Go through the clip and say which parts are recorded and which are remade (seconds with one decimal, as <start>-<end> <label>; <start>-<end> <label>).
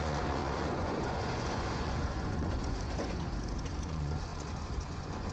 0.0-5.3 remade